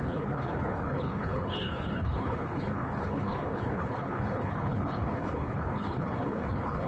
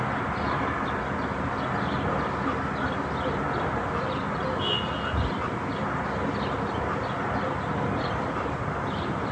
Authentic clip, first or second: second